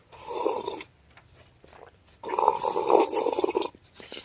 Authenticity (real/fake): fake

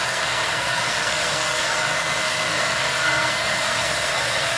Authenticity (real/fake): fake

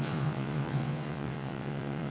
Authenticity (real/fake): fake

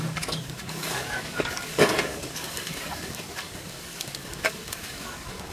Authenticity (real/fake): fake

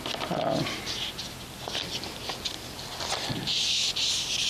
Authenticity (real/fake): real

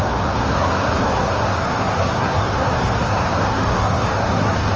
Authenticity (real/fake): fake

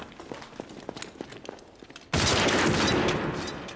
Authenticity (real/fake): real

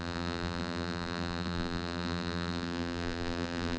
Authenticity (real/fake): fake